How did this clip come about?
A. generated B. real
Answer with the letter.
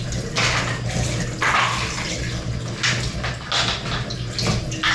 B